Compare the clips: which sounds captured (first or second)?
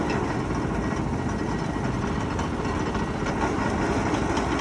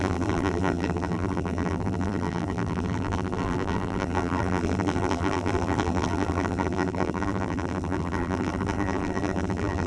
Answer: first